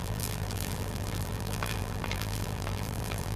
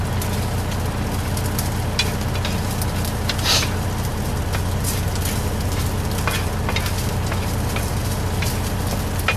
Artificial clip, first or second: first